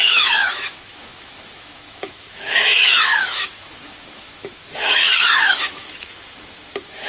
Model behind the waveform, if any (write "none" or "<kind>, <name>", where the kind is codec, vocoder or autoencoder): autoencoder, DAC-VAE